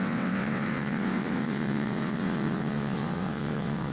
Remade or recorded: remade